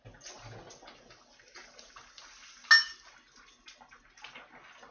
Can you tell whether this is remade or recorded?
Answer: recorded